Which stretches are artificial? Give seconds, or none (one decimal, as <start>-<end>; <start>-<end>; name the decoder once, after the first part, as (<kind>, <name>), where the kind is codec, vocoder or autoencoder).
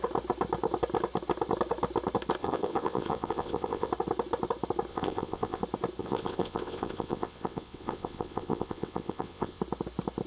2.4-3.9 (vocoder, WaveNeXt); 4.9-5.6; 6.0-9.6